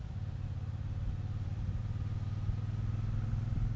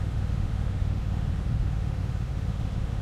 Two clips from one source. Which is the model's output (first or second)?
second